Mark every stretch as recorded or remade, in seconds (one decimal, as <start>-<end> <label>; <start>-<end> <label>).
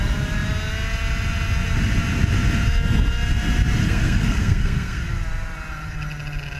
0.0-3.8 recorded; 3.8-5.0 remade; 5.0-6.6 recorded